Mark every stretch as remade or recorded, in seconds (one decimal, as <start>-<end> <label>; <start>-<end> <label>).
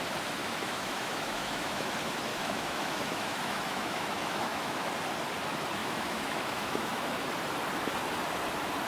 0.0-0.4 recorded; 0.4-1.9 remade; 1.9-2.3 recorded; 2.3-4.9 remade; 4.9-5.8 recorded; 5.8-7.1 remade; 7.1-8.9 recorded